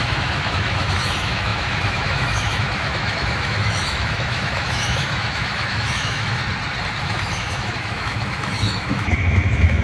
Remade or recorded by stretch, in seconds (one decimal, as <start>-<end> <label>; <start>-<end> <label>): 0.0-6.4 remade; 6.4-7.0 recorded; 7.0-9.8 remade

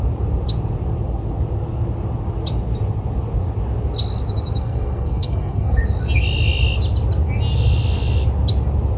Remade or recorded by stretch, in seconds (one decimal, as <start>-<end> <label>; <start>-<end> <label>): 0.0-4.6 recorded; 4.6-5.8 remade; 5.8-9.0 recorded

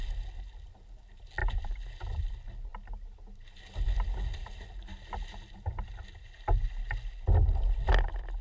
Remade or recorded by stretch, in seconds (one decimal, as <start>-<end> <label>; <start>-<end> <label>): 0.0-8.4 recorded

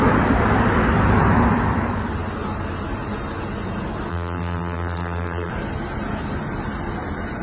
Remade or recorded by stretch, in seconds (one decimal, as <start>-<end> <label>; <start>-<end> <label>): 0.0-4.1 recorded; 4.1-5.5 remade; 5.5-7.4 recorded